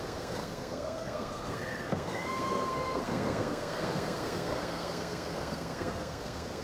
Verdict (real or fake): fake